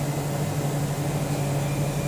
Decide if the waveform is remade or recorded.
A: recorded